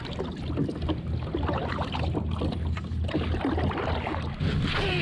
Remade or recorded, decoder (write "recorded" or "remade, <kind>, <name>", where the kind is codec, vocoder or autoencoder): recorded